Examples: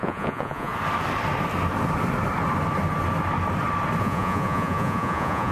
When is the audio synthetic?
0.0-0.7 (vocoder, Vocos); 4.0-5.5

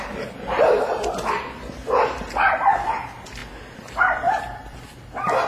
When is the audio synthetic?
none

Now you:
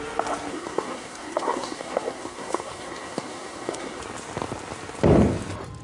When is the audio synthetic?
0.5-4.0 (codec, SNAC)

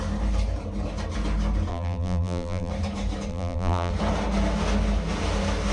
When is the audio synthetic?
1.7-2.7 (vocoder, BigVGAN v2); 3.3-3.9